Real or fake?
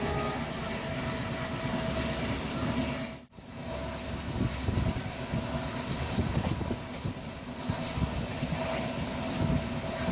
real